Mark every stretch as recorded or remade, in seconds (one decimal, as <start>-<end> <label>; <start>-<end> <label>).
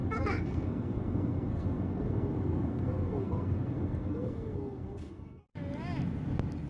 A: 0.0-5.5 remade; 5.5-6.7 recorded